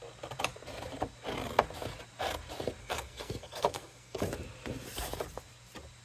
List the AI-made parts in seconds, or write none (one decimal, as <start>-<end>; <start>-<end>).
2.8-4.2

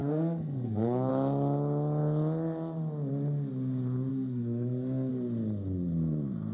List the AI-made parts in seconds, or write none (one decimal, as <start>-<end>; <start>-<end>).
0.0-1.1; 4.1-5.1

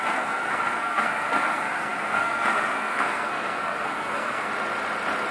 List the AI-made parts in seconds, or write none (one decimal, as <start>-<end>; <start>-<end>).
0.0-4.5

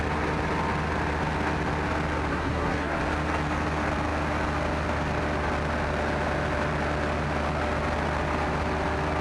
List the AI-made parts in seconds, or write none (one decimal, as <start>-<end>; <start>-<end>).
2.3-3.0

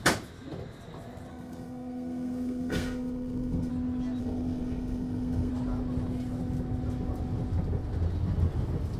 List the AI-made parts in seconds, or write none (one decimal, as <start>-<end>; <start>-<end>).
1.3-3.7; 4.2-5.5

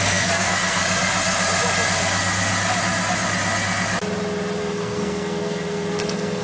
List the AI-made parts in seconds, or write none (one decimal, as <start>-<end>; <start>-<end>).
0.0-0.8; 4.6-6.4